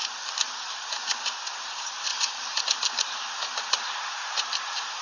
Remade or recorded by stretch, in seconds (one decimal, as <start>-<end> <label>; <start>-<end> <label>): 0.0-5.0 remade